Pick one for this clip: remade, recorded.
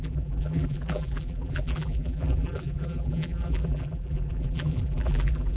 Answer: remade